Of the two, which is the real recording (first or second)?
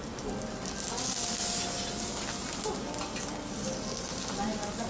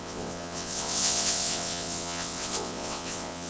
first